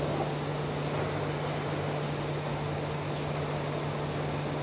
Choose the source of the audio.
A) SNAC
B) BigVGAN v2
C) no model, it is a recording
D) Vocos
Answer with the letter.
C